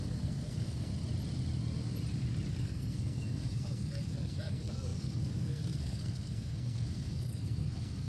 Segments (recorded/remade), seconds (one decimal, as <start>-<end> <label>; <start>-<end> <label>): 0.0-0.9 remade; 0.9-2.5 recorded; 2.5-8.1 remade